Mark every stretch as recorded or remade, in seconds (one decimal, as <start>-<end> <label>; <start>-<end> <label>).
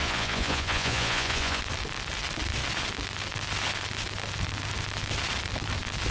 0.0-1.6 remade; 1.6-6.1 recorded